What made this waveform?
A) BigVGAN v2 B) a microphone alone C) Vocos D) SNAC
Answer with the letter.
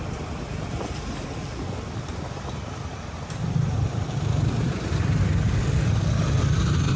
A